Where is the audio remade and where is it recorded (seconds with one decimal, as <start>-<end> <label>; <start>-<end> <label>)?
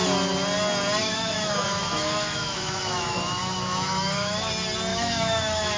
0.0-1.0 recorded; 1.0-4.5 remade; 4.5-4.9 recorded; 4.9-5.8 remade